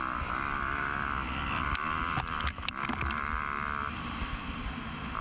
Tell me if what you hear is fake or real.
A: real